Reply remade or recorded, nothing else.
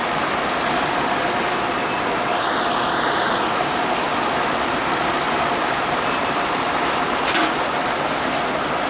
recorded